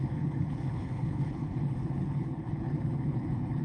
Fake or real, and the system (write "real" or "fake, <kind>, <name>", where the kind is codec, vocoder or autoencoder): fake, codec, HILCodec